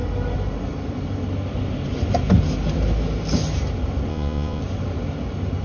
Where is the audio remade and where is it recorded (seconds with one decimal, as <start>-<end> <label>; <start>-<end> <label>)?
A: 0.0-4.1 recorded; 4.1-4.6 remade; 4.6-5.6 recorded